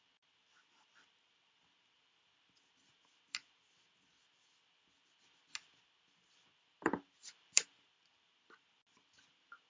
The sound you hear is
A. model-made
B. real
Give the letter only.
B